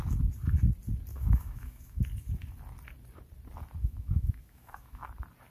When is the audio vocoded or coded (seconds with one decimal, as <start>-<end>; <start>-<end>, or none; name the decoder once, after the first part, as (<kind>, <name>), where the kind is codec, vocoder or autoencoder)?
1.1-2.0 (autoencoder, DAC-VAE); 3.8-5.1